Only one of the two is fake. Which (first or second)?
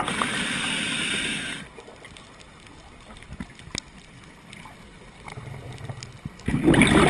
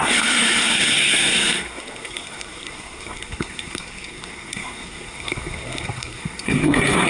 second